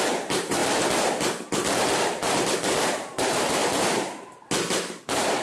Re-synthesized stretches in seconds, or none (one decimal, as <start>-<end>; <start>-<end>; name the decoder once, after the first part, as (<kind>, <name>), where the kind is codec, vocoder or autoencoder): 0.0-0.6 (vocoder, BigVGAN v2); 2.9-3.6; 5.0-5.4